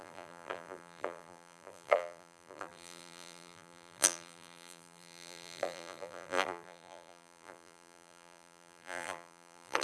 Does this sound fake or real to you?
fake